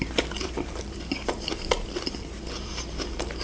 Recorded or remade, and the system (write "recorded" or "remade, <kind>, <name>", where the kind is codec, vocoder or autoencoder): remade, vocoder, BigVGAN v2